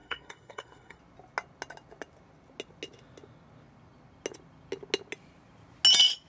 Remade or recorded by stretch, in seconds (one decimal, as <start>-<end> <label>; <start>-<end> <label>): 0.0-1.0 remade; 1.0-6.3 recorded